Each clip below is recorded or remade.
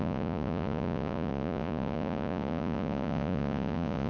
remade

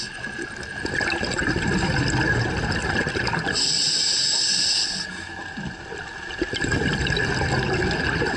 recorded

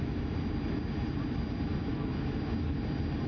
recorded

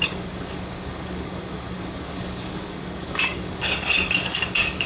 remade